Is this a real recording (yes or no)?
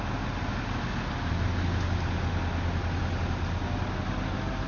yes